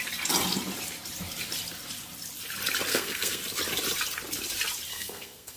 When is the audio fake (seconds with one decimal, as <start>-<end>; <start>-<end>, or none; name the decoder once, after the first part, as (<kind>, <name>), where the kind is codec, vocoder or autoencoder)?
2.9-3.4 (codec, SNAC); 4.9-5.6